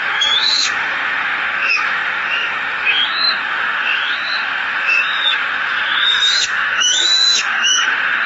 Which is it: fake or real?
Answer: fake